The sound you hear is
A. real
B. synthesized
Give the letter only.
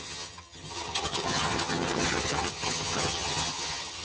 B